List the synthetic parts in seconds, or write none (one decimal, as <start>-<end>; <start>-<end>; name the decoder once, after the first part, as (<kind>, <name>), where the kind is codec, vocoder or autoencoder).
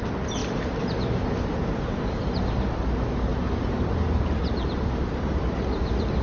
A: 0.4-2.8 (vocoder, BigVGAN v2); 3.3-3.9